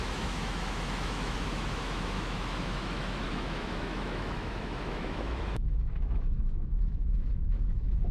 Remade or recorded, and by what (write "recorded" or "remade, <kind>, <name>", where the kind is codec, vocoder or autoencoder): remade, autoencoder, DAC-VAE